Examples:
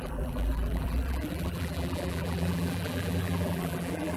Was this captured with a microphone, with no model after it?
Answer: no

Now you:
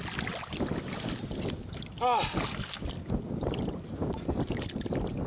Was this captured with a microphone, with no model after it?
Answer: yes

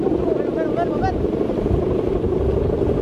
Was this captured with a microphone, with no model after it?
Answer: yes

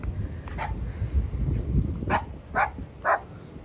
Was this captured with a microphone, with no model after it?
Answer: yes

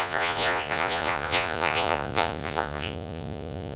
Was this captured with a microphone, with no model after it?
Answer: no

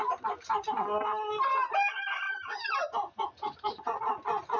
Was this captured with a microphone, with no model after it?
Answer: yes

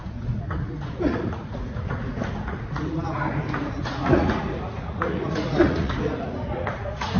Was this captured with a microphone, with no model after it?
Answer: no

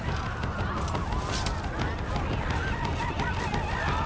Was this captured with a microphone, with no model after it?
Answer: yes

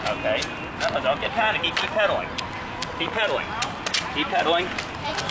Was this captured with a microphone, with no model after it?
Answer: yes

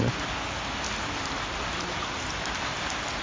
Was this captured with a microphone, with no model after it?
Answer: yes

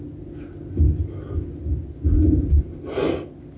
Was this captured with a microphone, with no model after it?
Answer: yes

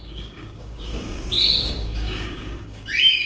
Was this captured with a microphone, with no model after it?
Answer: no